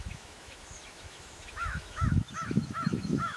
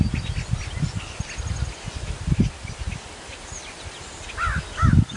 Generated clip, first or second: first